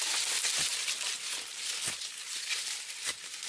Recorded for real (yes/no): yes